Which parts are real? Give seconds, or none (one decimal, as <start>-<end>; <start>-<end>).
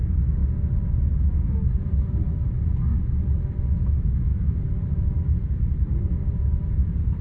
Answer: 0.0-4.3